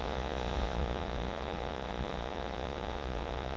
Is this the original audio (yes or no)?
no